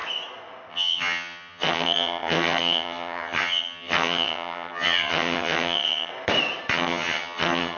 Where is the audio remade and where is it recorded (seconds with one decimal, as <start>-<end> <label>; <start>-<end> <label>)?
0.0-0.7 recorded; 0.7-6.1 remade; 6.1-6.7 recorded; 6.7-7.8 remade